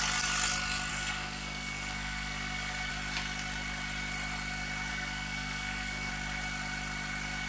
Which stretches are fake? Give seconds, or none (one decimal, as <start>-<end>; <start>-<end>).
0.9-2.9; 4.9-6.1